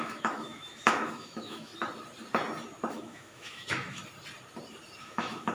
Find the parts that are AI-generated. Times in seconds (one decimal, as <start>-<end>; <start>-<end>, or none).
0.0-1.7; 2.9-4.0; 5.0-5.5